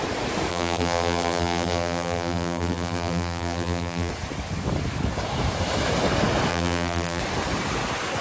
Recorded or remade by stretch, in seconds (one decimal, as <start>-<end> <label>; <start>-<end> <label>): 0.0-0.5 recorded; 0.5-4.1 remade; 4.1-6.5 recorded; 6.5-7.2 remade; 7.2-8.2 recorded